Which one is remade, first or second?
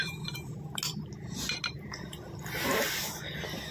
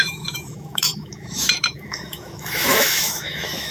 second